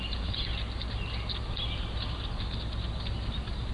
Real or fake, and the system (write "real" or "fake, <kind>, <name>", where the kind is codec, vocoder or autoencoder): real